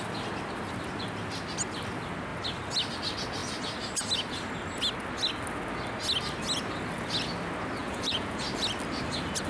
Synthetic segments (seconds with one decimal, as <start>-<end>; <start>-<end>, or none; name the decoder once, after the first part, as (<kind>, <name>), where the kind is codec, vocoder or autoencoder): 7.8-8.4 (vocoder, Vocos)